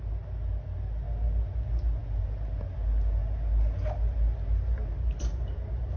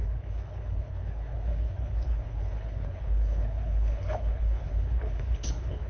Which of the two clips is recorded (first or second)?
first